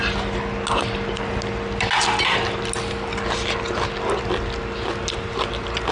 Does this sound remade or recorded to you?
recorded